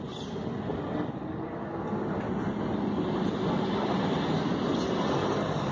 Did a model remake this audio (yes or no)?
no